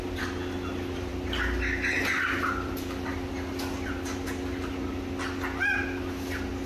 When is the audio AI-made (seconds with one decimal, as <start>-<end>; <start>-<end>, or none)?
none